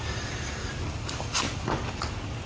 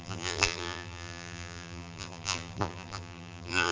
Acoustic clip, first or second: first